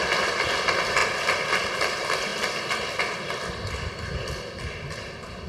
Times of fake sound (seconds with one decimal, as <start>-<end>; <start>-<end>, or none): none